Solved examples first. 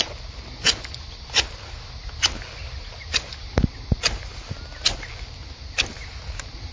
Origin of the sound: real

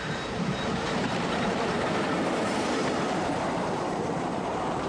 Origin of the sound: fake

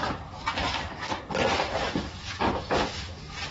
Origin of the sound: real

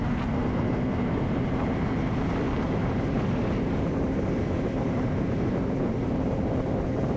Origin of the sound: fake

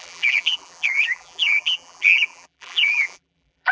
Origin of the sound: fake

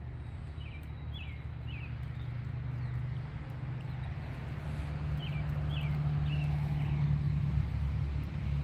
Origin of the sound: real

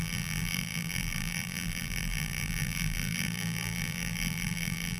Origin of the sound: fake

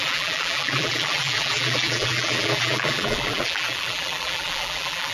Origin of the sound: fake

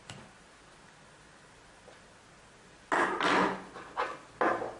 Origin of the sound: real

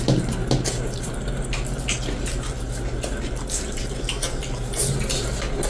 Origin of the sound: real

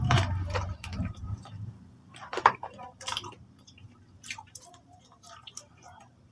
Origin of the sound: fake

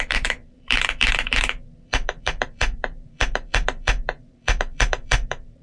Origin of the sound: fake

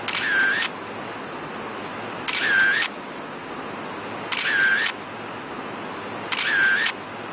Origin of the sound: real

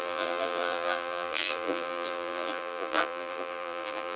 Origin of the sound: fake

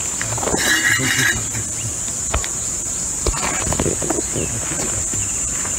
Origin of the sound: real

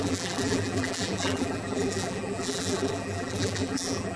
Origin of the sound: fake